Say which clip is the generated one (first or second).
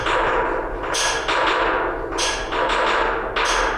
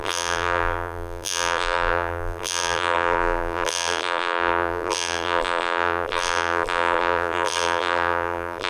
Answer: second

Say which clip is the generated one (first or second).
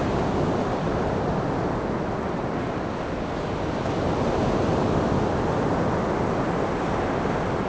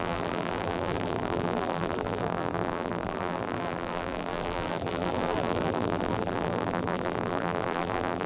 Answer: second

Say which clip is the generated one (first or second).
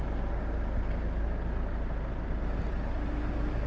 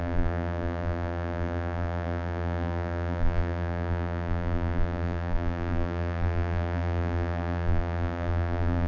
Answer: second